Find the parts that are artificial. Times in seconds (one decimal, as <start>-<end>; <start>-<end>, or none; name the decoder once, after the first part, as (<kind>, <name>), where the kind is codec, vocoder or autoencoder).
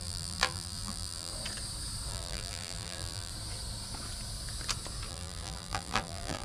0.0-1.3 (vocoder, BigVGAN v2); 2.1-3.3; 5.1-6.4